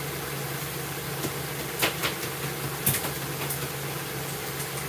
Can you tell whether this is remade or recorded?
recorded